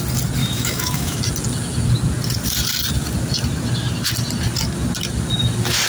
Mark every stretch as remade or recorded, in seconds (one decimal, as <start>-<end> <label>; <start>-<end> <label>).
0.0-0.4 recorded; 0.4-1.2 remade; 1.2-5.9 recorded